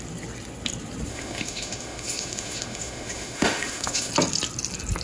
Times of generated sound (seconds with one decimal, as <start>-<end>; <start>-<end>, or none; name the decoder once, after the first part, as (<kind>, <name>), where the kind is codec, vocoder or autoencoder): 1.1-4.1 (autoencoder, DAC-VAE)